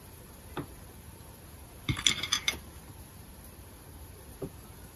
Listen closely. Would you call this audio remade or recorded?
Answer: remade